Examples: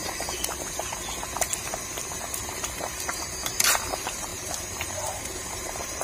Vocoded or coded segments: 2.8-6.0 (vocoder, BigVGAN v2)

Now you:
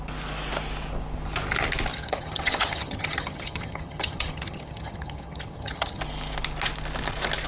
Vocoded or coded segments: 1.9-6.0 (vocoder, HiFi-GAN)

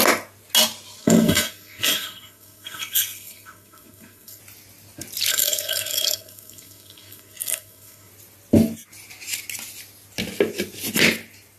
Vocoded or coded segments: 1.0-4.4 (codec, SNAC); 5.3-8.1